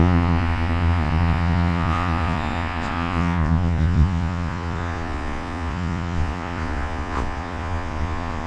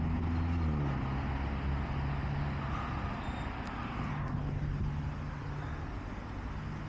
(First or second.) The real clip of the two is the second